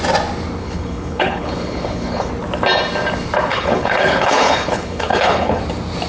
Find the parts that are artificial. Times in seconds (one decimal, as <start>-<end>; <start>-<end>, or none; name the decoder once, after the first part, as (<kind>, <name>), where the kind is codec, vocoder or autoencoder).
0.6-2.3 (codec, HILCodec); 3.5-5.6